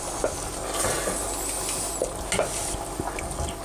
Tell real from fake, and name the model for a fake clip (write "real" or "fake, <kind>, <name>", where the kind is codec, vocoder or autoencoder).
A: real